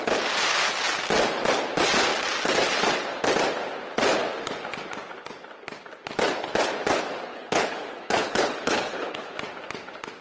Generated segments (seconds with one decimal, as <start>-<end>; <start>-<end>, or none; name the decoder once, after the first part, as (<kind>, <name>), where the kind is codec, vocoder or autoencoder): 7.3-9.3 (codec, HILCodec)